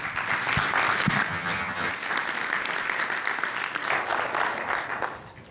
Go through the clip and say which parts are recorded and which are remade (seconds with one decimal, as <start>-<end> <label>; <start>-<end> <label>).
0.0-1.3 recorded; 1.3-1.9 remade; 1.9-5.5 recorded